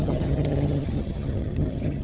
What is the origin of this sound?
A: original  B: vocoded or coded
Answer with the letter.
B